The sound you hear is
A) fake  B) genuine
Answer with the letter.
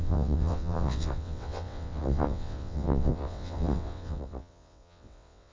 A